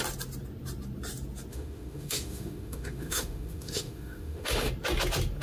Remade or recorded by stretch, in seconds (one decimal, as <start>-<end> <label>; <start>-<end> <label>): 0.0-1.5 recorded; 1.5-4.7 remade; 4.7-5.4 recorded